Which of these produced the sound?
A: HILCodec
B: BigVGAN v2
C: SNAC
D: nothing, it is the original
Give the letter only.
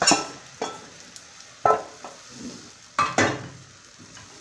D